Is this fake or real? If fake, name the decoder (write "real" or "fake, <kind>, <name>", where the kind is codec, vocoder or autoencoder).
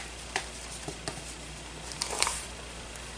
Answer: real